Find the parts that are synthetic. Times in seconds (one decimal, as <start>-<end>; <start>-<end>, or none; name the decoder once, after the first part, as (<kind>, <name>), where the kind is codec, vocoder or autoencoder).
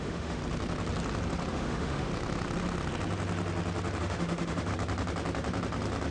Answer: 0.0-0.4 (autoencoder, DAC-VAE); 1.5-2.1; 4.0-4.7